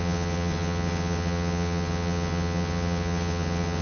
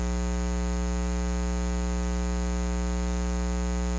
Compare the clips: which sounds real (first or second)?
second